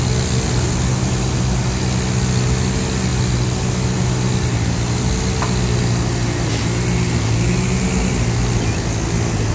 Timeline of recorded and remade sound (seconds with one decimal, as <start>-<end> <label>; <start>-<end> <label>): 0.0-9.5 recorded